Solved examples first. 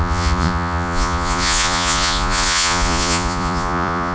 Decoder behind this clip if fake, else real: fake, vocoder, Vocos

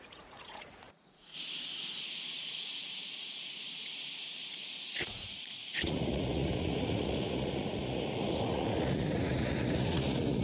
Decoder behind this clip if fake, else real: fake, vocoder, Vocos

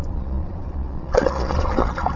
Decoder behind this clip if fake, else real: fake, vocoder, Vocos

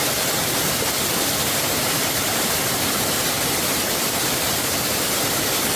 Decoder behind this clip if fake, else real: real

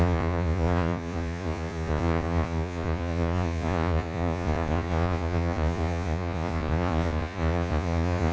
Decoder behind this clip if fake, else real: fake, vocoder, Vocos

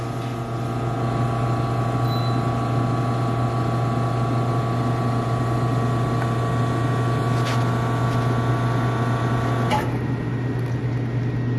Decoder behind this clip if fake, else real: real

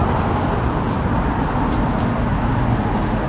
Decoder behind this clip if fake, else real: real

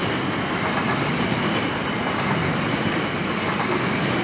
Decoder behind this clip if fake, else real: real